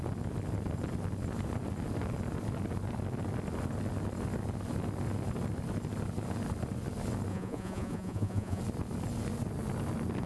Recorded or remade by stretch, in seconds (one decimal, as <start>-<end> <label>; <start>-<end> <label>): 0.0-7.3 recorded; 7.3-8.6 remade; 8.6-10.3 recorded